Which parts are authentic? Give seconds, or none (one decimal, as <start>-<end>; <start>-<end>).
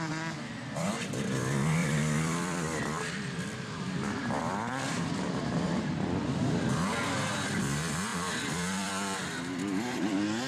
0.0-1.8; 6.6-8.1; 8.9-10.5